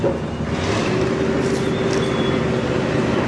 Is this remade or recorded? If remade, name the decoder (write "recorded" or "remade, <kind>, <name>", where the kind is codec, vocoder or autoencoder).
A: recorded